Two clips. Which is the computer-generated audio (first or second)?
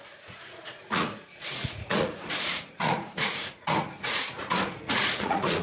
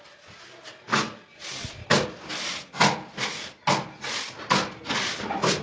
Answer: first